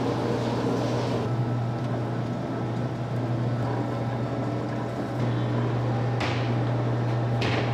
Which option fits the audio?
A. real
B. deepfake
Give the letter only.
A